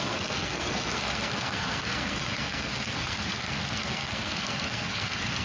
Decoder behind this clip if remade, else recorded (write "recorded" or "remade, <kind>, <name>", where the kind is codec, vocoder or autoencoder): remade, codec, SNAC